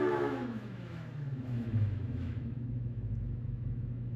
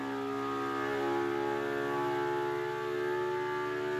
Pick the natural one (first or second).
second